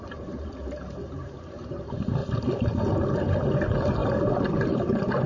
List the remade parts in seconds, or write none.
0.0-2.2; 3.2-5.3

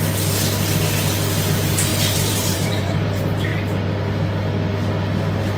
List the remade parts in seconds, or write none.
1.9-3.1

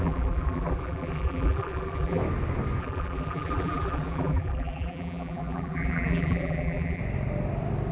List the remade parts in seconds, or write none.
0.0-2.2; 2.8-7.0

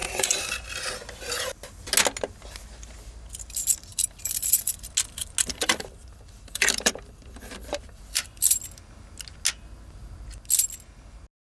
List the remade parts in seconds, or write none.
0.0-0.6; 3.9-4.8; 5.4-8.6

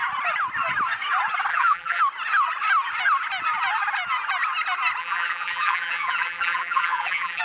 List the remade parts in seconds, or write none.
1.5-2.0; 5.0-7.4

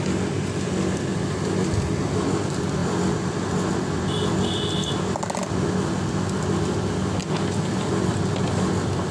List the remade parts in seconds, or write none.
2.8-3.7; 7.2-8.1

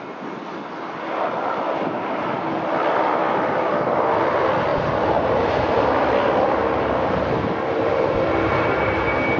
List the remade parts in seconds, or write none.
4.7-5.5